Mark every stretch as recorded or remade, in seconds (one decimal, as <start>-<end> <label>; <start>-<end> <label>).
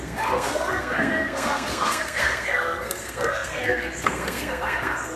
0.0-5.2 remade